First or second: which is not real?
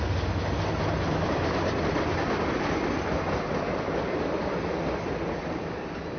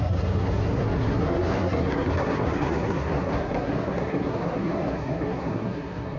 second